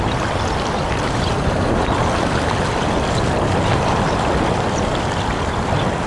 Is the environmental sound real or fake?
real